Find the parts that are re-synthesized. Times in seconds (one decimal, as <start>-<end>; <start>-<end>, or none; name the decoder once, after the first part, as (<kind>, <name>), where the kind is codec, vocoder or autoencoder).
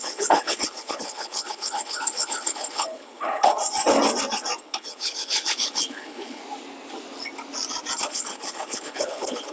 0.0-3.5 (codec, HILCodec); 4.6-6.4; 8.0-9.5